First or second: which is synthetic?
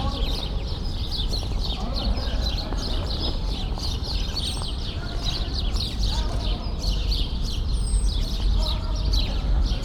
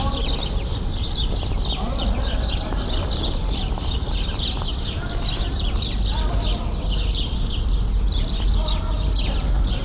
first